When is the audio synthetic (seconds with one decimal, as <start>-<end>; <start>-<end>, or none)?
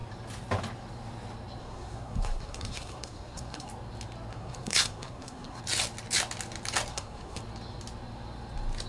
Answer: 1.6-3.7; 4.3-5.6; 6.9-7.4